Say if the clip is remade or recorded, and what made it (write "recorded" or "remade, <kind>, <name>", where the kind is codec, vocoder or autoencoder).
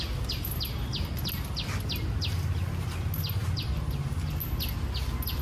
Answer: recorded